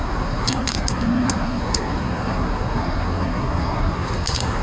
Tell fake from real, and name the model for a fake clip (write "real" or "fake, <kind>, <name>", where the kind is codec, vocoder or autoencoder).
fake, codec, SNAC